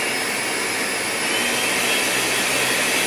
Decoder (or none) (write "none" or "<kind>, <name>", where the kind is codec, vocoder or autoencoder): none